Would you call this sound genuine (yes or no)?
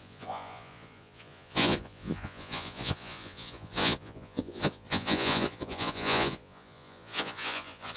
no